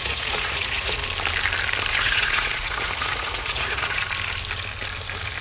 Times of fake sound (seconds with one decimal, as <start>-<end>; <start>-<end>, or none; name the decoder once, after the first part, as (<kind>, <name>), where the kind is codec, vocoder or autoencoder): 0.0-1.0 (vocoder, Vocos); 1.9-4.0